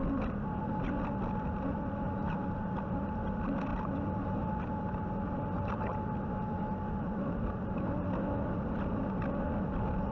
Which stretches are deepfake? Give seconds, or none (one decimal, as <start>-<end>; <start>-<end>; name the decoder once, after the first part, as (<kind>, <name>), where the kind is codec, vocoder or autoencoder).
none